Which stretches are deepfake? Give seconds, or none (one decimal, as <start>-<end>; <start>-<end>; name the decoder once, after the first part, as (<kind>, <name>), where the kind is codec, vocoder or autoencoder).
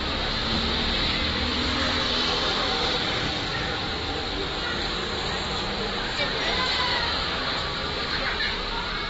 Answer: 6.9-7.4 (autoencoder, DAC-VAE)